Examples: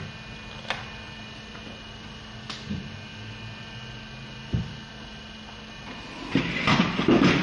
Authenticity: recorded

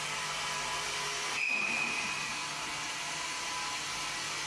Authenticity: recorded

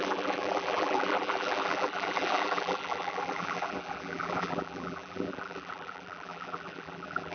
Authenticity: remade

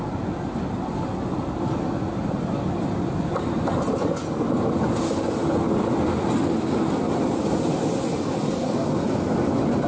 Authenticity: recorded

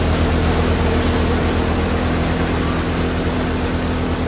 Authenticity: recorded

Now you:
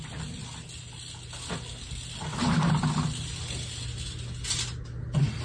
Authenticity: recorded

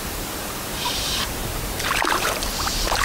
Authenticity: remade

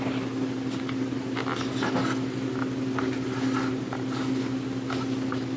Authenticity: recorded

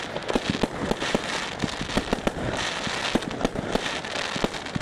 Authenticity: recorded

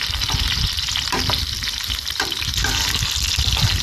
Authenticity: recorded